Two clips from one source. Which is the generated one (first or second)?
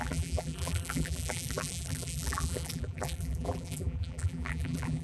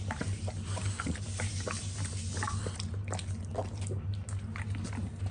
first